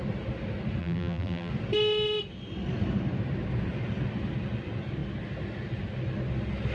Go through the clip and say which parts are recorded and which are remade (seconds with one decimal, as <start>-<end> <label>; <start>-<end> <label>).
0.0-0.8 recorded; 0.8-1.5 remade; 1.5-6.7 recorded